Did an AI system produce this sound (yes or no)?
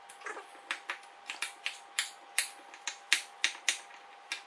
no